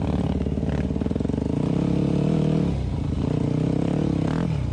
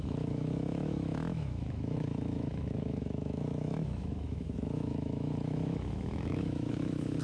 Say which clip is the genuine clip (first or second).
first